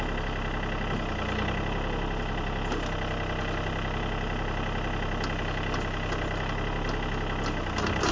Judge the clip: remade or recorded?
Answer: recorded